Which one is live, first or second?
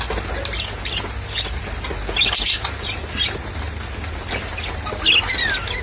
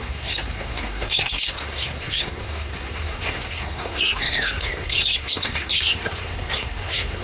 first